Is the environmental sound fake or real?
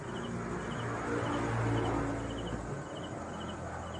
real